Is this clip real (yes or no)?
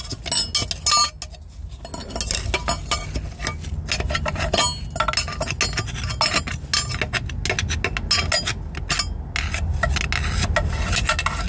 yes